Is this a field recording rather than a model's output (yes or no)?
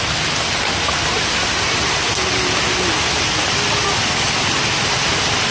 yes